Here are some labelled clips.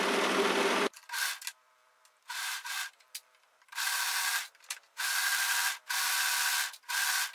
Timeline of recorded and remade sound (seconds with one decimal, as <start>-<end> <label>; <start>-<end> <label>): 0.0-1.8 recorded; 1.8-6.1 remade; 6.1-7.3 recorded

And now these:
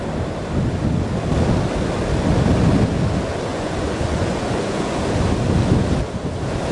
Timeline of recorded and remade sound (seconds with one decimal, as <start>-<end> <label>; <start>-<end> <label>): 0.0-3.5 recorded; 3.5-5.0 remade; 5.0-6.7 recorded

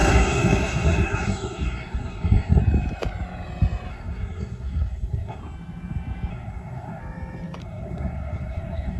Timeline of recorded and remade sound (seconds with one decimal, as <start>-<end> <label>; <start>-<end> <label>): 0.0-2.6 remade; 2.6-3.9 recorded; 3.9-5.4 remade; 5.4-6.3 recorded; 6.3-7.0 remade; 7.0-7.6 recorded; 7.6-9.0 remade

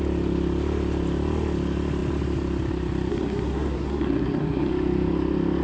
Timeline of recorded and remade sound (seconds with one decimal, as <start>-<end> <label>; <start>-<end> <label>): 0.0-3.1 recorded; 3.1-4.7 remade; 4.7-5.6 recorded

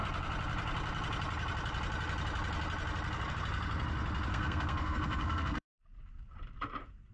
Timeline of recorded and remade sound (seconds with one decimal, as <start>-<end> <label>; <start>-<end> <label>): 0.0-4.3 recorded; 4.3-5.7 remade; 5.7-7.1 recorded

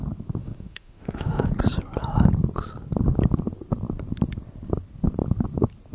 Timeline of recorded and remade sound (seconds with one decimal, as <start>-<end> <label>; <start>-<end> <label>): 0.0-0.4 recorded; 0.4-1.5 remade; 1.5-5.9 recorded

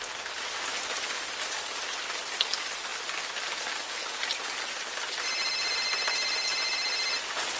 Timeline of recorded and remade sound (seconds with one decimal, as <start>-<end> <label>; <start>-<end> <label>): 0.0-7.6 recorded